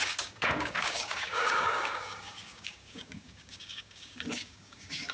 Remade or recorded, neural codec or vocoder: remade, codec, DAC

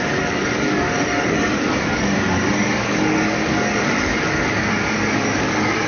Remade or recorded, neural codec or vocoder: remade, codec, DAC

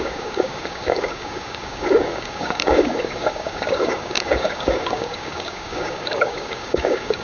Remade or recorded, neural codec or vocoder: remade, codec, DAC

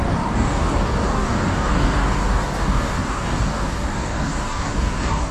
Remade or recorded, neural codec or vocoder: remade, codec, DAC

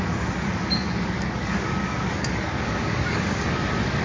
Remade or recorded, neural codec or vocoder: remade, codec, DAC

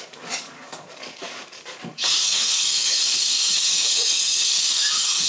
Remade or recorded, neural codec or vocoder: remade, codec, DAC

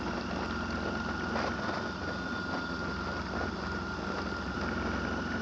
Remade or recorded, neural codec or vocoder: recorded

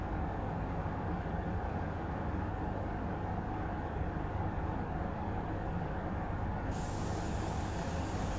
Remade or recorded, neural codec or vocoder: remade, codec, DAC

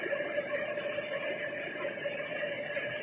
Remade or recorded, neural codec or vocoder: recorded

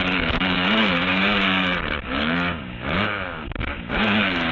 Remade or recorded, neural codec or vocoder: remade, codec, DAC